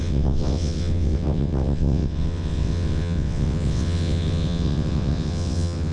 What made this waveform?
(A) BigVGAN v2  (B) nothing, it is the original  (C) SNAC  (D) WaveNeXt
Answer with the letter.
D